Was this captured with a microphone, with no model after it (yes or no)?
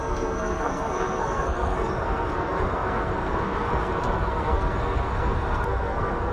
no